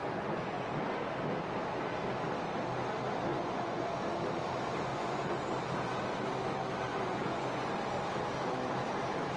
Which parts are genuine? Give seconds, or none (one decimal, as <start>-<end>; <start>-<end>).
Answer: 0.7-3.3; 3.9-4.9; 5.4-6.9; 7.7-9.4